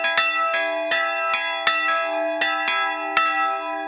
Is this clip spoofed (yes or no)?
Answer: no